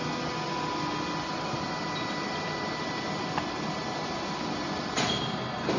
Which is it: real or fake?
real